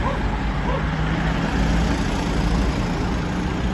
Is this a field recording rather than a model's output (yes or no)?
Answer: yes